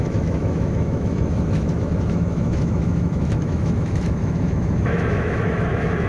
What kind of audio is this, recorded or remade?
remade